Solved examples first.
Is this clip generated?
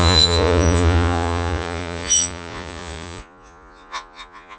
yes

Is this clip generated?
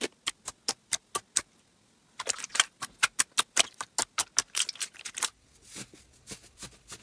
no